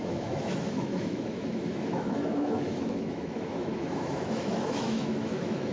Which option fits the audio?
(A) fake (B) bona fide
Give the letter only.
A